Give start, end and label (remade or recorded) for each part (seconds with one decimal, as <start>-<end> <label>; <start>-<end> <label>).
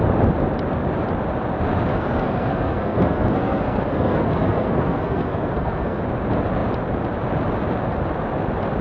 0.0-1.9 recorded; 1.9-6.0 remade; 6.0-8.8 recorded